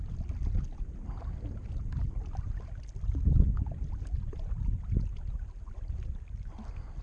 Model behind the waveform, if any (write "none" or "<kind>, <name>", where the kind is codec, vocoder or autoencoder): none